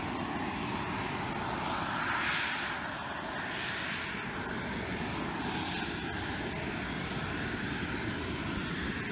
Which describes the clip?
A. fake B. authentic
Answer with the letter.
B